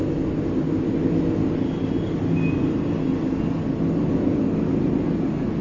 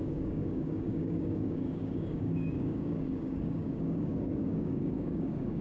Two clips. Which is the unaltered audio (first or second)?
first